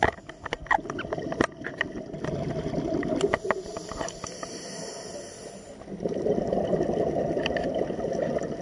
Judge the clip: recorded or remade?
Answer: recorded